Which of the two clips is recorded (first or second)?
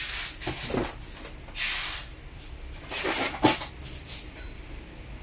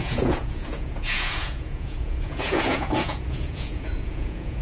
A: first